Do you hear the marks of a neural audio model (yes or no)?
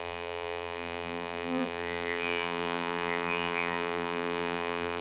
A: yes